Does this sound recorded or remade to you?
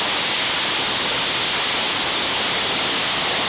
recorded